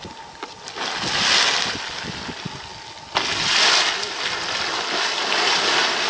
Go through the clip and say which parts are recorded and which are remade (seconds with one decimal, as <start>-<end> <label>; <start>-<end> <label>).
0.0-6.1 recorded